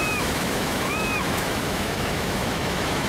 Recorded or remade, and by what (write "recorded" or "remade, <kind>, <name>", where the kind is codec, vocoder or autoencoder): remade, autoencoder, DAC-VAE